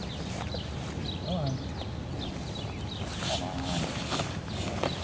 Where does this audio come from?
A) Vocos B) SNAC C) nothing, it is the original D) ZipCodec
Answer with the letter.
C